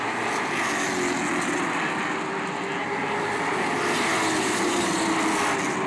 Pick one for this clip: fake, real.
real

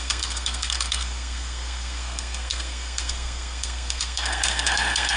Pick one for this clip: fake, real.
fake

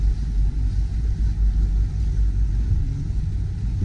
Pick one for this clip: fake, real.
real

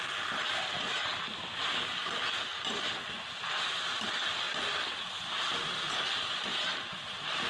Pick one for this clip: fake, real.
real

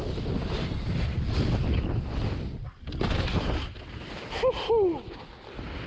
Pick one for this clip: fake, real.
real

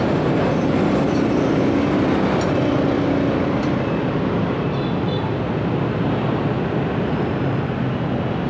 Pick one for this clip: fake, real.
real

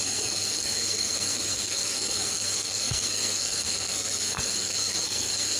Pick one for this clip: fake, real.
fake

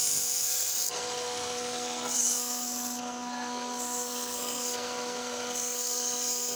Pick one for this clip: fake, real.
fake